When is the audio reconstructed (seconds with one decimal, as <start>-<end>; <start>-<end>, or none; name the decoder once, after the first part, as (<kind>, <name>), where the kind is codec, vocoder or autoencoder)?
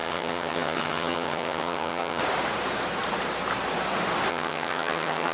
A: 0.0-2.2 (vocoder, HiFi-GAN); 4.3-5.3